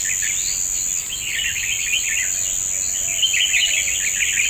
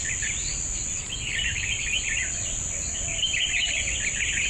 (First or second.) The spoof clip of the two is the second